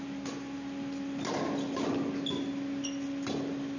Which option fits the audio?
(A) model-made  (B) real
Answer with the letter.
B